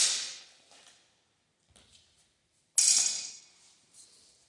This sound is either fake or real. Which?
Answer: real